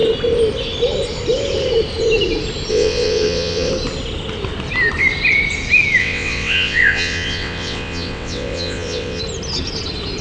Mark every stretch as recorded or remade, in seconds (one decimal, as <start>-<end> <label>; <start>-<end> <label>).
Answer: 0.0-2.7 recorded; 2.7-3.7 remade; 3.7-6.0 recorded; 6.0-9.2 remade; 9.2-10.2 recorded